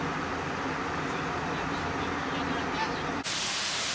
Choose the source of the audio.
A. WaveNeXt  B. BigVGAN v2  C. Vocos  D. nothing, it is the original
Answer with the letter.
D